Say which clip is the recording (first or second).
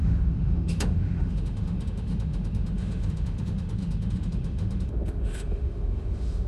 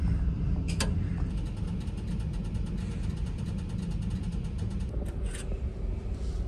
second